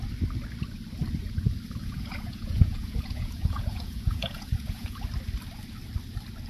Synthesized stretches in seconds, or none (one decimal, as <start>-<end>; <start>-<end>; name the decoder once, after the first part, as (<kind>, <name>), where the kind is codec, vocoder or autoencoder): 1.8-5.1 (vocoder, Vocos)